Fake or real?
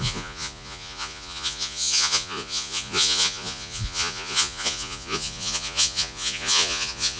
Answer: fake